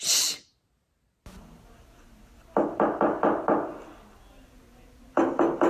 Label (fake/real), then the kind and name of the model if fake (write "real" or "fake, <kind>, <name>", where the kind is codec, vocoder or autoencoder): real